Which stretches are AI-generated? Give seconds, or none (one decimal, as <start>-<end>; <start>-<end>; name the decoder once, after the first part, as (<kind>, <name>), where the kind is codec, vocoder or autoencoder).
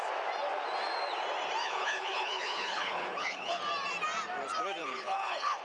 1.6-3.6 (codec, HILCodec); 4.8-5.6